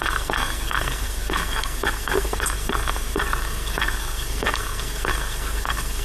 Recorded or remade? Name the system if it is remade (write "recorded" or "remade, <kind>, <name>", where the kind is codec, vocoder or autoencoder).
remade, codec, SNAC